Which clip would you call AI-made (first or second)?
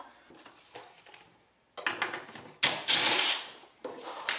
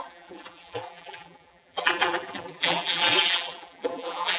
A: second